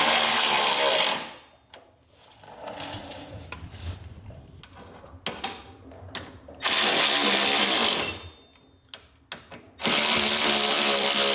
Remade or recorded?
recorded